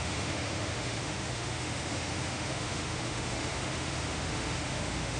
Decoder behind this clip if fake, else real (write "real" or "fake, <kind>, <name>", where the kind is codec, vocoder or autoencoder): fake, autoencoder, DAC-VAE